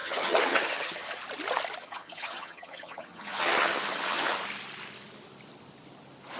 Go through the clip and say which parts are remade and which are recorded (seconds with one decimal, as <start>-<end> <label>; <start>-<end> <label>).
0.0-1.2 remade; 1.2-1.8 recorded; 1.8-4.4 remade; 4.4-6.4 recorded